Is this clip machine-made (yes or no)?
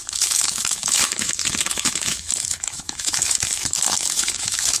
yes